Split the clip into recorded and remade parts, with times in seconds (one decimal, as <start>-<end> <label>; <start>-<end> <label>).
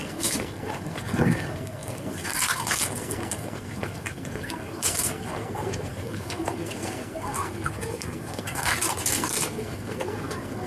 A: 0.0-10.7 remade